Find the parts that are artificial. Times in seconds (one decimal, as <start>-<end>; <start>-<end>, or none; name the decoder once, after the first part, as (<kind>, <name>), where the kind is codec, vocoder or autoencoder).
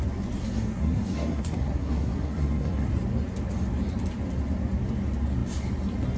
0.4-2.9 (codec, SNAC)